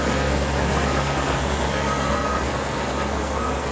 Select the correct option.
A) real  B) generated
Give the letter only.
B